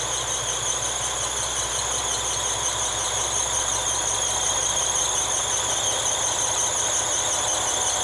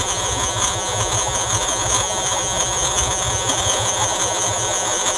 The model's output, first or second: second